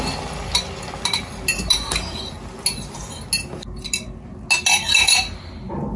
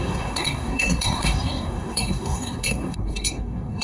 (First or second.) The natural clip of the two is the first